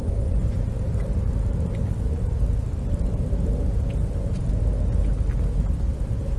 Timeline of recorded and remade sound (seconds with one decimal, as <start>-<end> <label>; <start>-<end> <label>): 0.0-0.6 remade; 0.6-6.4 recorded